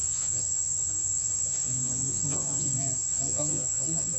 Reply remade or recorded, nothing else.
remade